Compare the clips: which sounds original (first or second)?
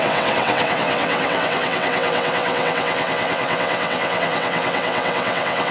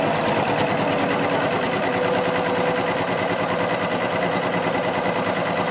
second